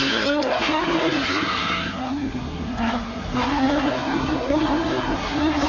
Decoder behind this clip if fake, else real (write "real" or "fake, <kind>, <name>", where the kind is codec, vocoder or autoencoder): fake, codec, SNAC